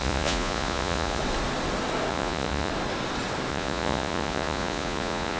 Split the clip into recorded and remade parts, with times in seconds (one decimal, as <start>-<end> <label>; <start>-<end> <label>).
0.0-1.2 remade; 1.2-2.1 recorded; 2.1-2.7 remade; 2.7-3.5 recorded; 3.5-5.4 remade